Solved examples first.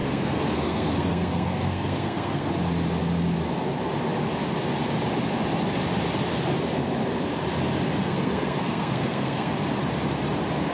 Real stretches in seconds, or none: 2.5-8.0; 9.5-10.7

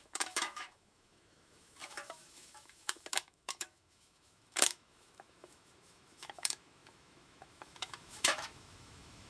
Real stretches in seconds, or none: none

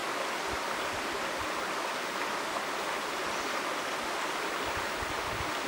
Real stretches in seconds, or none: 0.0-5.7